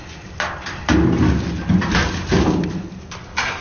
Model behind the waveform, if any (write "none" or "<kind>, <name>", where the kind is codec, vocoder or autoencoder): none